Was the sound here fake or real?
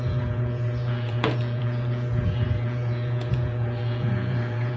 fake